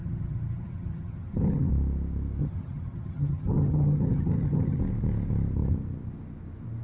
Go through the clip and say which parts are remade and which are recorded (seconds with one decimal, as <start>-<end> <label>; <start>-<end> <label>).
0.0-1.7 remade; 1.7-2.4 recorded; 2.4-4.8 remade; 4.8-6.8 recorded